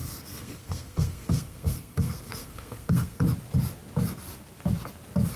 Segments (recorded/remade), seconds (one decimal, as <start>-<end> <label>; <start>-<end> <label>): 0.0-3.2 remade; 3.2-5.4 recorded